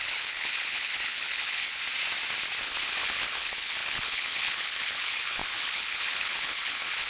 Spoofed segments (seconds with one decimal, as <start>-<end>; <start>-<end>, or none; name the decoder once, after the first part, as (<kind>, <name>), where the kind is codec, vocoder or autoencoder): 0.0-1.7 (codec, HILCodec); 2.6-7.1